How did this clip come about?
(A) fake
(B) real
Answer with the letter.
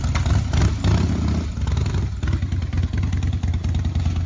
B